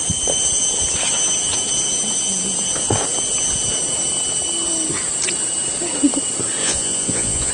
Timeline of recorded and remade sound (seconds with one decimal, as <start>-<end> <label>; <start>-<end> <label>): 0.0-6.6 recorded; 6.6-7.5 remade